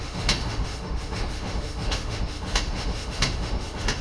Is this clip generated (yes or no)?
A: yes